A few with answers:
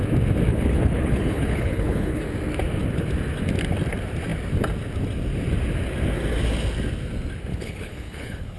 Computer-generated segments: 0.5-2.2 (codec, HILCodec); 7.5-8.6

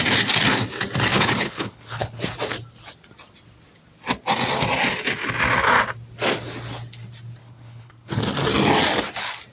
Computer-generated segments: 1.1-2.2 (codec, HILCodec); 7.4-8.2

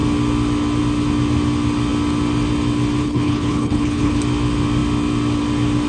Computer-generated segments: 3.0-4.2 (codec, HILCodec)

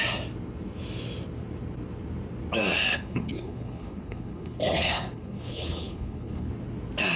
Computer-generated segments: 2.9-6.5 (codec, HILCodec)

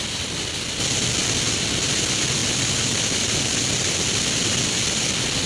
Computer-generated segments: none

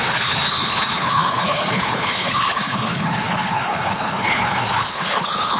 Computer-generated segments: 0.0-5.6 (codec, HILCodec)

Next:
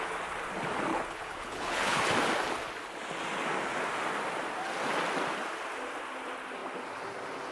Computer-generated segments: 0.9-2.0 (codec, HILCodec)

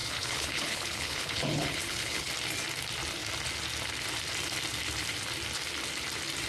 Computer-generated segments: 0.0-2.3 (codec, HILCodec)